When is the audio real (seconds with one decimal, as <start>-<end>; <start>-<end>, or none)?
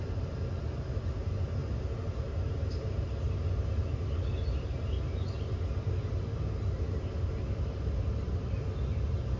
0.0-9.4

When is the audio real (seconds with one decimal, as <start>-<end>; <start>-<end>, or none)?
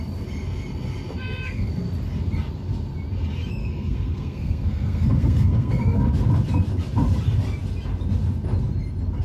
0.0-1.2; 1.7-3.6; 6.1-9.2